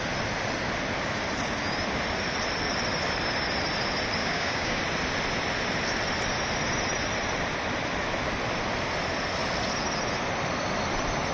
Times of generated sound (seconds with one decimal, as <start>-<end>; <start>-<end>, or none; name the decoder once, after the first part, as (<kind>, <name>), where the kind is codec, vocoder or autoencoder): 4.2-4.8 (codec, DAC)